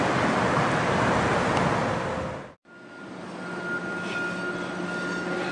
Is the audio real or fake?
real